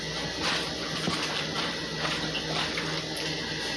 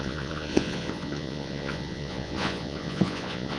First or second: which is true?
first